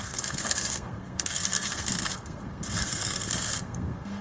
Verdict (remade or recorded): remade